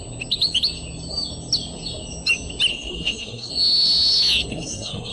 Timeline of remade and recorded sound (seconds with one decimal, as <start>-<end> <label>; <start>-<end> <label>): 0.0-2.7 recorded; 2.7-3.5 remade; 3.5-4.5 recorded; 4.5-5.1 remade